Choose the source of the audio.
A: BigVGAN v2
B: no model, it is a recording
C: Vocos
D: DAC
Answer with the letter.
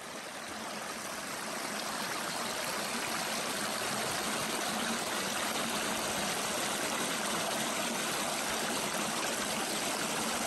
B